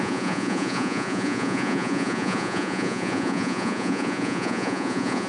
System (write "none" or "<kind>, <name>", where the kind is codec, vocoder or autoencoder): vocoder, Vocos